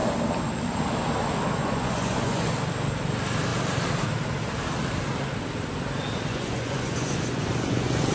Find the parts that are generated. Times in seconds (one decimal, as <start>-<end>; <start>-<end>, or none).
1.6-2.5; 6.3-8.1